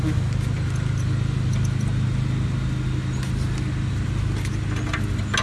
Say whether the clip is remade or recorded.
recorded